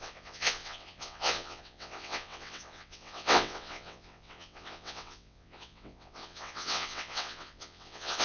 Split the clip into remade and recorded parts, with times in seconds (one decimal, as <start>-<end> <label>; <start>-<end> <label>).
0.0-8.2 remade